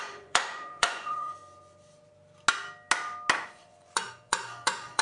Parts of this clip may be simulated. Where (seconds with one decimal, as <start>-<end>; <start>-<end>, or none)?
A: 0.0-1.4; 3.4-5.0